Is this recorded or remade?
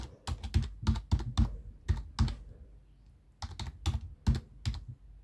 recorded